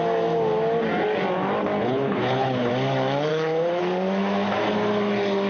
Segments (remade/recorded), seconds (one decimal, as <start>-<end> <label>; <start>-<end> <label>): 0.0-1.8 recorded; 1.8-2.7 remade; 2.7-3.3 recorded; 3.3-3.8 remade; 3.8-5.5 recorded